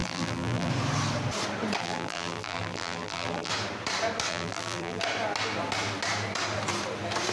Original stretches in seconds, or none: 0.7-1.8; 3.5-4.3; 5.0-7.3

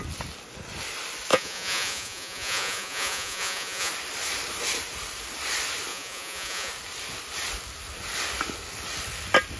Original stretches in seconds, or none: 0.0-1.3; 3.9-5.9; 6.7-9.6

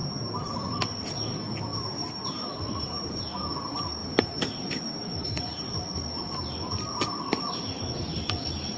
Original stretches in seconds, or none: 0.7-1.7; 3.2-4.0; 5.7-8.8

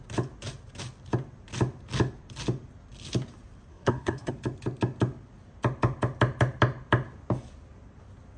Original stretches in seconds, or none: 0.0-3.7; 4.3-8.4

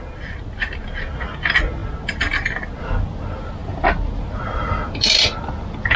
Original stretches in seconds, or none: 0.0-6.0

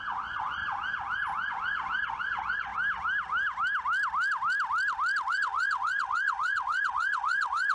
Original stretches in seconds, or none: 0.6-1.5; 2.7-5.3

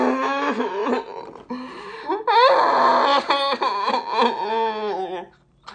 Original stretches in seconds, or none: 0.0-5.7